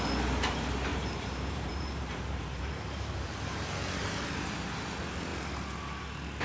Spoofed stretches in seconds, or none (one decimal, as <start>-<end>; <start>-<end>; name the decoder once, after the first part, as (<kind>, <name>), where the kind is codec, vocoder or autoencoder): 0.9-4.7 (vocoder, BigVGAN v2)